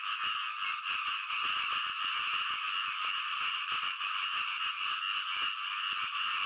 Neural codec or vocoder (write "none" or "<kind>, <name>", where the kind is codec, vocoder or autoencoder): none